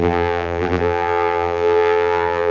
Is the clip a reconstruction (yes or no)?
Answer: yes